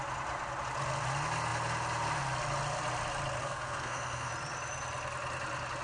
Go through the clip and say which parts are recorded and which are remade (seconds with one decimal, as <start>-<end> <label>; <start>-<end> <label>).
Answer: 0.0-3.4 recorded; 3.4-4.3 remade; 4.3-5.8 recorded